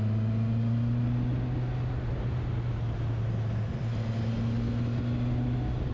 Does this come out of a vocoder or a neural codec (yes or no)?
no